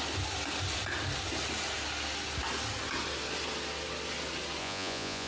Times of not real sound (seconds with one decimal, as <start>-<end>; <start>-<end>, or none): 4.6-5.3